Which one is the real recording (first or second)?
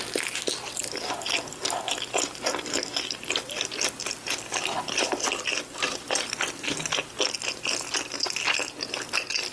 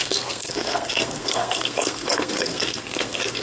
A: first